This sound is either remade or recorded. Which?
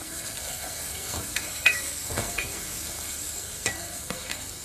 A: remade